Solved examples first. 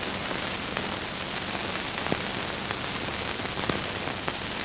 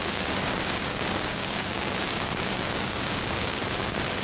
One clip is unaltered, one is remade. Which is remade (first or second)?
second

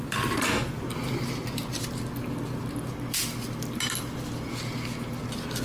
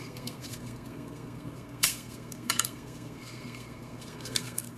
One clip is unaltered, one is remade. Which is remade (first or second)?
second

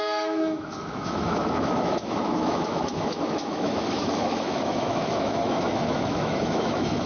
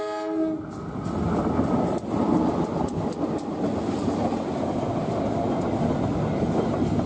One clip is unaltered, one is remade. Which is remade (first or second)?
first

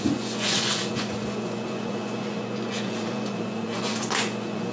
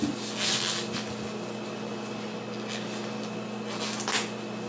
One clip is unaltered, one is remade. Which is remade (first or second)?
first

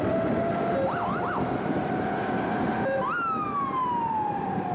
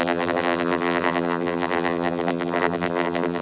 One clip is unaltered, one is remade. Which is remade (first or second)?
second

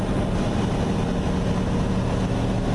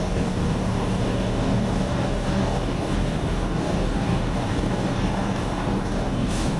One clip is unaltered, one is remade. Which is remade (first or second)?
second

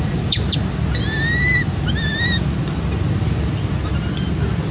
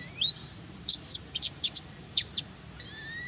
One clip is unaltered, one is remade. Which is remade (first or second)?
second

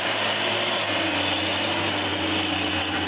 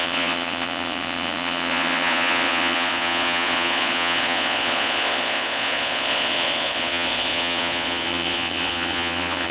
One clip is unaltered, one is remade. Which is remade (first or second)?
second